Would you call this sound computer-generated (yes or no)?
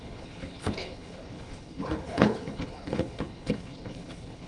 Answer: yes